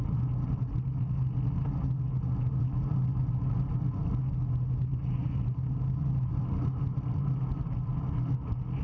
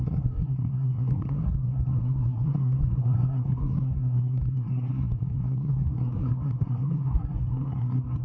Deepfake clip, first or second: second